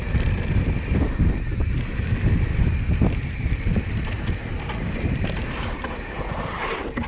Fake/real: real